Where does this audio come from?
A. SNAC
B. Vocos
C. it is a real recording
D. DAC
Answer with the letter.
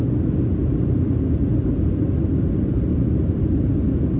C